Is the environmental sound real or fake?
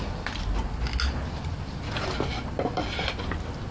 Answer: real